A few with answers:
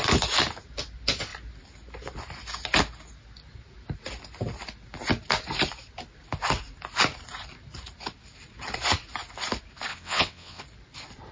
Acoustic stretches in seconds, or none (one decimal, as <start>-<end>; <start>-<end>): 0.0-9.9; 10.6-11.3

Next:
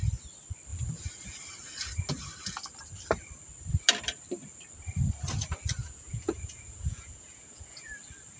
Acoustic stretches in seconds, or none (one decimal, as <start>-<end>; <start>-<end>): 0.0-5.8; 7.9-8.4

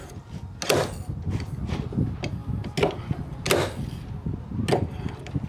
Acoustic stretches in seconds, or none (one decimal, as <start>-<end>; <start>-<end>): 0.0-5.5

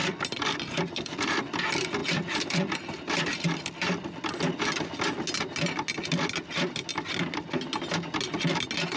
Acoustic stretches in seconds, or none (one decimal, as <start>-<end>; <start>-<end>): 1.4-2.0; 4.3-9.0

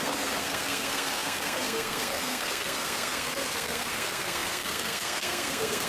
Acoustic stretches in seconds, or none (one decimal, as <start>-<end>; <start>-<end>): none

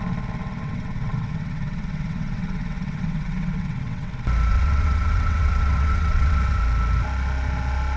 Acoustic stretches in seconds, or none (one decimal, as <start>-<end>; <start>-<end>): 0.0-0.4; 4.1-4.5; 6.6-8.0

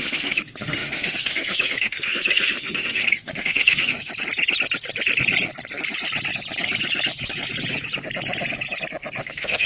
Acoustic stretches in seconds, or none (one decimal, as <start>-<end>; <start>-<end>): 4.1-9.2

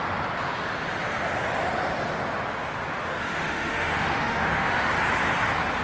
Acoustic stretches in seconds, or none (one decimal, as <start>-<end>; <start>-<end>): 0.0-3.0; 4.9-5.8